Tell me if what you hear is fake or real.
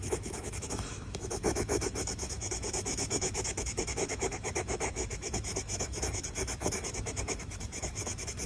fake